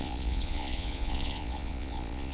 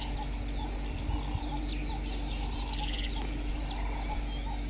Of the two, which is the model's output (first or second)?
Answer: first